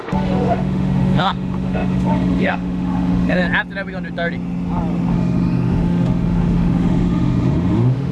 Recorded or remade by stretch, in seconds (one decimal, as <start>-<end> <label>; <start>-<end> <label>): 0.0-3.4 remade; 3.4-5.1 recorded; 5.1-8.1 remade

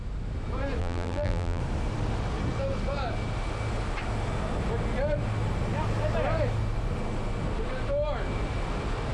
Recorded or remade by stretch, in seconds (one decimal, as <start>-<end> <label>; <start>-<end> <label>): 0.0-0.8 recorded; 0.8-1.6 remade; 1.6-9.1 recorded

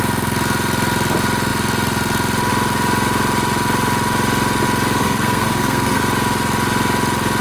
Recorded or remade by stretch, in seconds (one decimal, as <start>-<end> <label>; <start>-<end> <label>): 0.0-5.0 recorded; 5.0-6.0 remade; 6.0-7.4 recorded